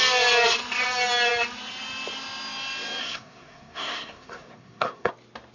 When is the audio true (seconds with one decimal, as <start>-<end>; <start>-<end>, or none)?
0.0-3.0; 5.1-5.5